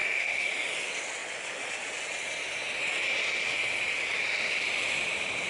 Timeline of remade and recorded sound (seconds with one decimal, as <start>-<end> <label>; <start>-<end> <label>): 0.0-0.5 remade; 0.5-5.5 recorded